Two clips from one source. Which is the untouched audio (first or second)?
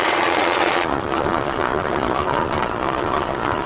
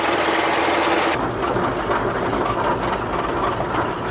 second